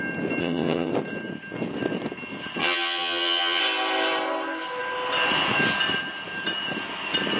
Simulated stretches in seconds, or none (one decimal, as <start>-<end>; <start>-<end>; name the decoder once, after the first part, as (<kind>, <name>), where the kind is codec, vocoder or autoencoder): 0.4-0.9 (vocoder, HiFi-GAN); 2.6-3.6